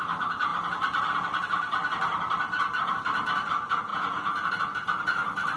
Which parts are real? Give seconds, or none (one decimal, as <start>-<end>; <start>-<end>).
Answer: 0.0-3.9; 4.5-5.6